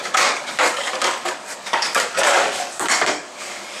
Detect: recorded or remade remade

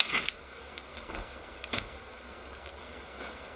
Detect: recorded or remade remade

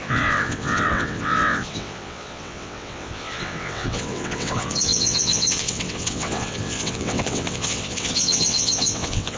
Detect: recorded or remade remade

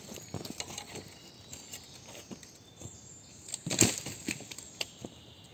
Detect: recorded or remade recorded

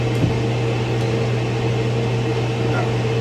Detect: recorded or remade recorded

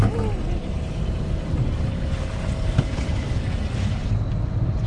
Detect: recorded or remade recorded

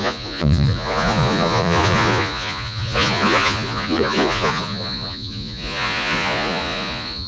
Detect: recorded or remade remade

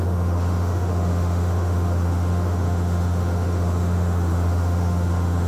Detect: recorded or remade remade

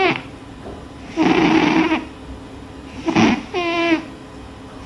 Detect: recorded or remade recorded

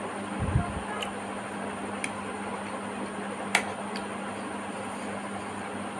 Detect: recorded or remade recorded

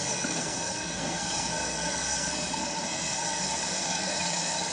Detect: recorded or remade remade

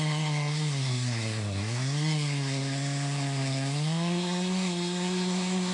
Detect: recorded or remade remade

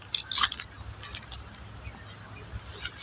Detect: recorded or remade recorded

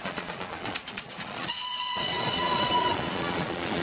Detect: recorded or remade remade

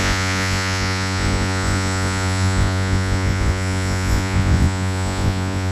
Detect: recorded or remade remade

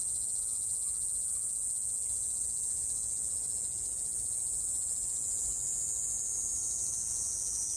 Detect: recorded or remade remade